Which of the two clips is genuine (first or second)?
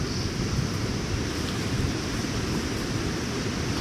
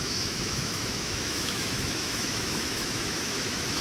first